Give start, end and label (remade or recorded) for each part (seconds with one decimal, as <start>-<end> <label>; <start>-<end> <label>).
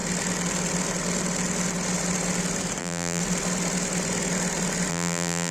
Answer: 0.0-2.8 recorded; 2.8-3.2 remade; 3.2-4.9 recorded; 4.9-5.5 remade